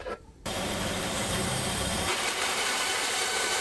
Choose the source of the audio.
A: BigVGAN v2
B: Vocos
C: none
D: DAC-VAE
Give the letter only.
A